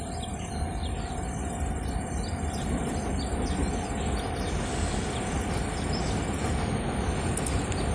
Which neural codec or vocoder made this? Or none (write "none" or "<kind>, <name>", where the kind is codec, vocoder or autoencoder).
vocoder, BigVGAN v2